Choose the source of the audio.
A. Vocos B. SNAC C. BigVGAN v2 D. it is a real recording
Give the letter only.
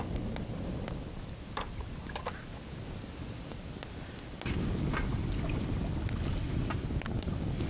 D